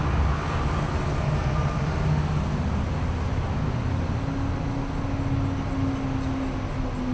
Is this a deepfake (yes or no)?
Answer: no